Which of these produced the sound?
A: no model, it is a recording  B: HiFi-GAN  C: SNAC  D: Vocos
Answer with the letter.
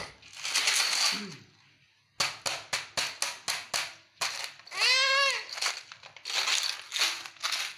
A